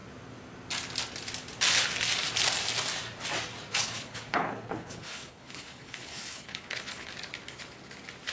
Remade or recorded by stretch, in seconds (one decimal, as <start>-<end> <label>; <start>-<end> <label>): 0.0-3.7 recorded; 3.7-7.1 remade; 7.1-8.3 recorded